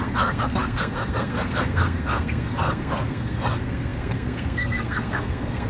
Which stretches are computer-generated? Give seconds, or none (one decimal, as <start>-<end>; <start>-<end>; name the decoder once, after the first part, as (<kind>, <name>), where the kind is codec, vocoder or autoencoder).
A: 0.0-5.7 (codec, SNAC)